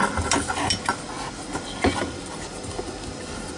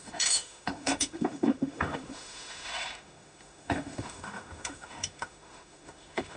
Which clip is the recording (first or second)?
first